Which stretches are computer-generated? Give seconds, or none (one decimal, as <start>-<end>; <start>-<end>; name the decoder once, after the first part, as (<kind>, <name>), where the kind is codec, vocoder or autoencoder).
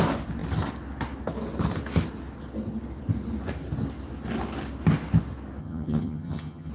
5.6-6.7 (vocoder, HiFi-GAN)